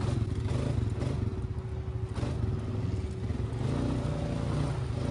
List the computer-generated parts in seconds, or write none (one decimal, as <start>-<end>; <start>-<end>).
none